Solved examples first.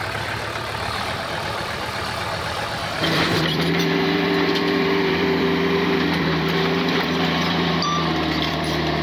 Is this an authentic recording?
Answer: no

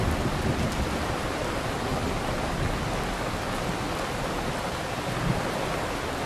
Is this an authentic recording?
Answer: yes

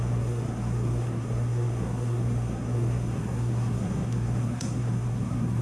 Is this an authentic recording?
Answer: no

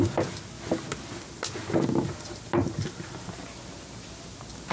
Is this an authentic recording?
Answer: yes